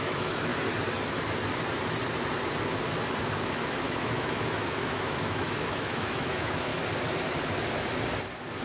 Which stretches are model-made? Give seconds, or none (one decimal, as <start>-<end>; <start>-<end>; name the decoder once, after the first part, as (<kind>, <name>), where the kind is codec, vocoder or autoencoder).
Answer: 0.0-0.5 (autoencoder, DAC-VAE); 3.4-6.7